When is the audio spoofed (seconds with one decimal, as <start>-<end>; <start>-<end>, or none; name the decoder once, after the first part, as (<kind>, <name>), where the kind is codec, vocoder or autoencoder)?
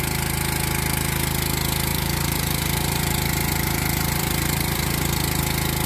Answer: 1.9-5.4 (vocoder, BigVGAN v2)